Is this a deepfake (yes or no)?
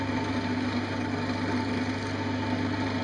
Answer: no